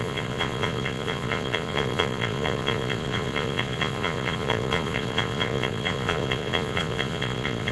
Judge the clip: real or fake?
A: fake